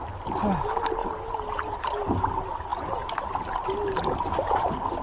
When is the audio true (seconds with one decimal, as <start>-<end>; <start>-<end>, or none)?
0.0-5.0